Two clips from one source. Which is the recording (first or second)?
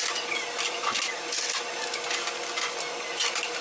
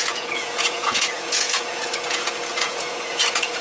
first